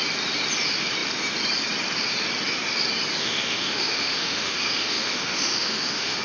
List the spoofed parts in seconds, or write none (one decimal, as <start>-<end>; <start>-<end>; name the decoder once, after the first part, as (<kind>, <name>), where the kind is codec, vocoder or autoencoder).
3.2-6.2 (autoencoder, DAC-VAE)